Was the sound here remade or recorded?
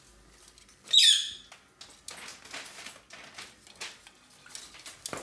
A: recorded